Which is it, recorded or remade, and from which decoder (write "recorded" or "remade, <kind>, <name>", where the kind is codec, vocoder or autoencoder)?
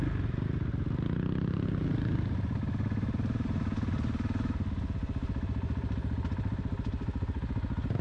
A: recorded